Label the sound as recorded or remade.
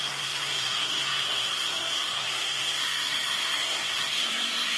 remade